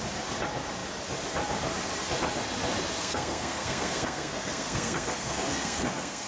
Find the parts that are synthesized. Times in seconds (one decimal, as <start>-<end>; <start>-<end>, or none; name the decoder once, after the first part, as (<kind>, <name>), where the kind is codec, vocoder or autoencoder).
3.0-6.3 (codec, SNAC)